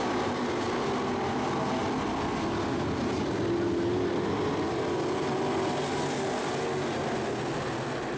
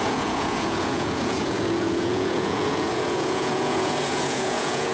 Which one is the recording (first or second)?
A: first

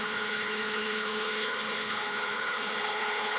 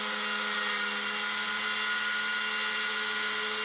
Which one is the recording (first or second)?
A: second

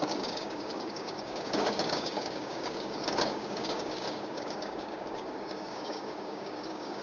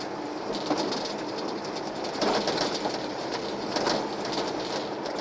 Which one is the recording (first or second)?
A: second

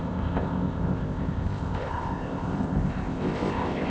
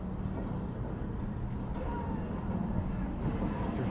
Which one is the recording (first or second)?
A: second